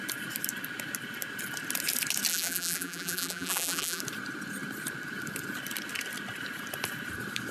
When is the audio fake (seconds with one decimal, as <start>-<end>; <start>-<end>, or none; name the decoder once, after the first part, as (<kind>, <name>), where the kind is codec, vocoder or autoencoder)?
2.3-4.0 (vocoder, BigVGAN v2)